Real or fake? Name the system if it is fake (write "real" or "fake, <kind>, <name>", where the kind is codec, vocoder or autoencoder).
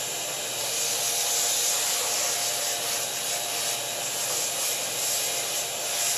real